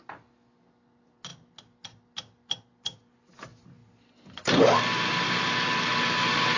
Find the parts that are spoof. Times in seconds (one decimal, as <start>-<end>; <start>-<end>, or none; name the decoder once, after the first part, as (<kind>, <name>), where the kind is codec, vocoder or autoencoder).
none